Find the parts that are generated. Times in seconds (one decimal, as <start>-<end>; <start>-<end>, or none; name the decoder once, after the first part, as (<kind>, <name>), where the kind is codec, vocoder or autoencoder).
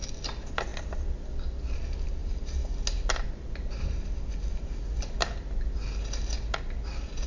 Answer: none